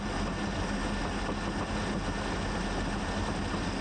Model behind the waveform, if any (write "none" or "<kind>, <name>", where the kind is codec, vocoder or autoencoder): none